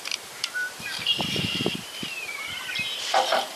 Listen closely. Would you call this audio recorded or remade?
remade